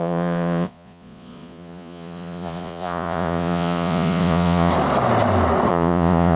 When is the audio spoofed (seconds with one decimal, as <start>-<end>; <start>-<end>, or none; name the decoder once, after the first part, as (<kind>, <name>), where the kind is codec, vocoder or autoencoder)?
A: 0.0-4.7 (vocoder, Vocos); 5.7-6.4